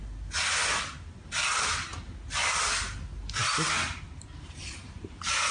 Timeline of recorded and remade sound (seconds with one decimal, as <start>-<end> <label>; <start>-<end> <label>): 0.0-5.5 recorded